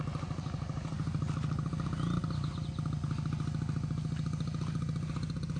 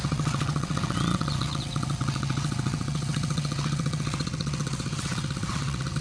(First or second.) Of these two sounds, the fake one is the second